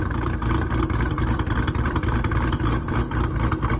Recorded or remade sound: remade